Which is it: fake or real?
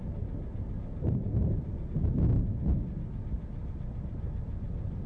real